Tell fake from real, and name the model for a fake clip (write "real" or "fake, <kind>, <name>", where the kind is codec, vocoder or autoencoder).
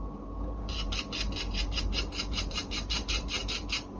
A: fake, vocoder, BigVGAN v2